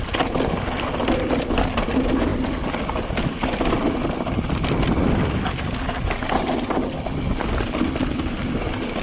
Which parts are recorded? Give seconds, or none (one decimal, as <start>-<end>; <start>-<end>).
0.0-9.0